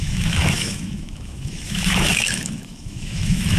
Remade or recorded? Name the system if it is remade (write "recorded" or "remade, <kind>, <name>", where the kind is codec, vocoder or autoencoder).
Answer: remade, autoencoder, DAC-VAE